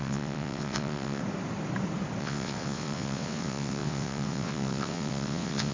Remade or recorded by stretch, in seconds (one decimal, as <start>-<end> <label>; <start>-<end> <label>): 0.0-1.2 remade; 1.2-2.2 recorded; 2.2-5.7 remade